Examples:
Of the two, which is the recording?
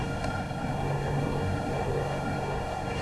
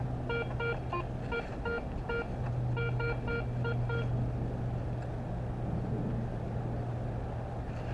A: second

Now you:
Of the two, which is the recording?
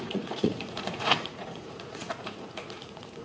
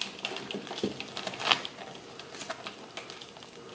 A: second